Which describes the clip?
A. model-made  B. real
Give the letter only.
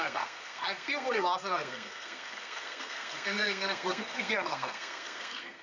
A